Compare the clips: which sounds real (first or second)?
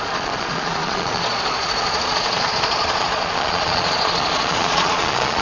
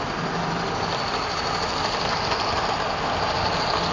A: second